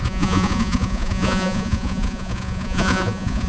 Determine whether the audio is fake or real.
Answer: fake